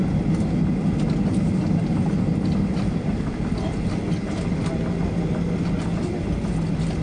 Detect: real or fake real